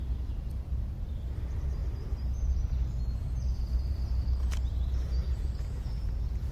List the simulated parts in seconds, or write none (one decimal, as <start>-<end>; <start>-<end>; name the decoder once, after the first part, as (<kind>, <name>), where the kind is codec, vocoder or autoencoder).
5.2-6.5 (vocoder, Vocos)